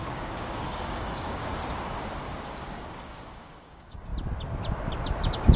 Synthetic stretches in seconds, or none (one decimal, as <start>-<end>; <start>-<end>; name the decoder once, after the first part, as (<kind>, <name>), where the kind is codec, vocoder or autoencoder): 0.0-1.6 (codec, DAC); 2.2-4.1